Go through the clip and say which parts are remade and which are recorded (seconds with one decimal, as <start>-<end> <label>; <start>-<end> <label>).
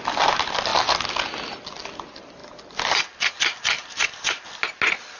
0.0-5.2 recorded